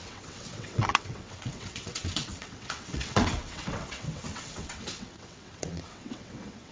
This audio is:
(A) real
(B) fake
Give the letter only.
B